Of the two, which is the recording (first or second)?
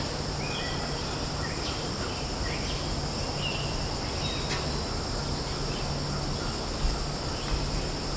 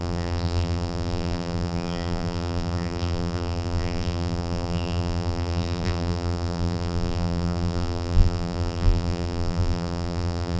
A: first